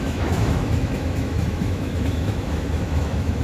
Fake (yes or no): yes